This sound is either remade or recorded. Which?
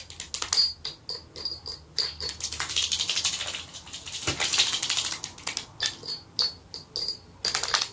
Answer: recorded